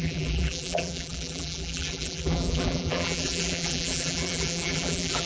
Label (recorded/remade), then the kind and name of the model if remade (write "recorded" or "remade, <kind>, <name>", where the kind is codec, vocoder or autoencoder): remade, vocoder, BigVGAN v2